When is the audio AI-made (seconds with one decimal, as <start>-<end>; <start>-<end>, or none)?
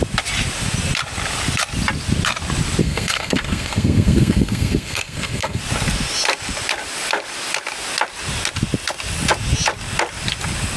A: 2.8-5.6